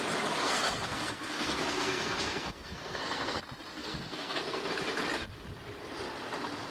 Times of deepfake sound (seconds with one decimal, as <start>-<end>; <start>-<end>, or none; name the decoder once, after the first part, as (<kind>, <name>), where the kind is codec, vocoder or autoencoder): 0.4-3.4 (codec, SNAC); 3.8-4.7